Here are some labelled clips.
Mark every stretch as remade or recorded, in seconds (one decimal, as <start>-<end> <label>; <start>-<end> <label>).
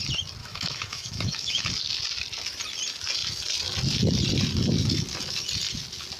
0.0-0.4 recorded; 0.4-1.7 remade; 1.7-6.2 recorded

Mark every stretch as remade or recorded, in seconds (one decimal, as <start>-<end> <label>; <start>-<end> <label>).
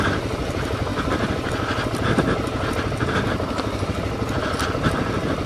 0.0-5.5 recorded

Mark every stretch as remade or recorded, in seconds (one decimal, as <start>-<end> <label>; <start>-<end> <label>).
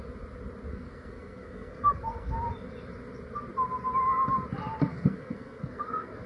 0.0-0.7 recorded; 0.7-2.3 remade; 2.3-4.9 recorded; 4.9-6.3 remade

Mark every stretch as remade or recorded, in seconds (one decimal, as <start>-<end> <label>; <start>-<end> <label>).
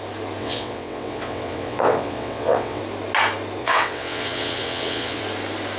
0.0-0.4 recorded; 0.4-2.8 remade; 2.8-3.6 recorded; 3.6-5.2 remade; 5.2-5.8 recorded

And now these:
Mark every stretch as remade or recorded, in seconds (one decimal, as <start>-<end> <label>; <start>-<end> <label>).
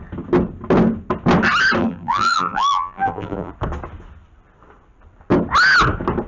0.0-1.8 recorded; 1.8-3.5 remade; 3.5-6.3 recorded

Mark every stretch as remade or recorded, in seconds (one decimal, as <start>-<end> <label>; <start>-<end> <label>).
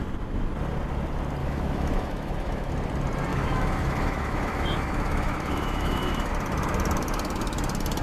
0.0-1.4 recorded; 1.4-2.7 remade; 2.7-3.3 recorded; 3.3-6.3 remade; 6.3-8.0 recorded